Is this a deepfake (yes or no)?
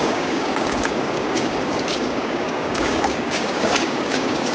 yes